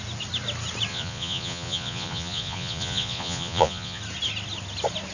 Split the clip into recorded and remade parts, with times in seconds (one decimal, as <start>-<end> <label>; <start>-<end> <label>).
0.0-0.9 recorded; 0.9-4.0 remade; 4.0-5.1 recorded